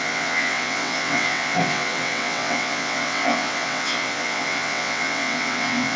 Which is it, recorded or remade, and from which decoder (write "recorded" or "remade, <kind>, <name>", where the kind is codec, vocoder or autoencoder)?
remade, vocoder, WaveNeXt